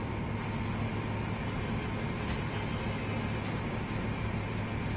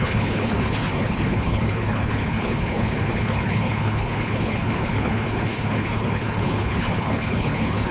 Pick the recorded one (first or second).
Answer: first